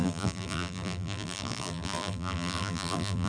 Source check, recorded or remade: remade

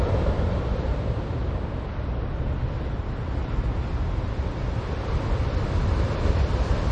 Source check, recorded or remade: recorded